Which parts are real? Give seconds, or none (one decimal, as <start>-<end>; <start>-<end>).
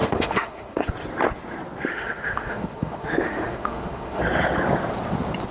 0.9-1.9; 4.2-5.5